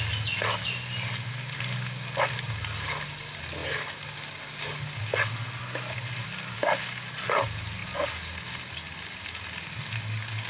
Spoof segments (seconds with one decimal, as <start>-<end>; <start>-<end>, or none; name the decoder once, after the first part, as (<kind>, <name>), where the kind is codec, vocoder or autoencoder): 0.0-7.8 (vocoder, BigVGAN v2); 10.0-10.5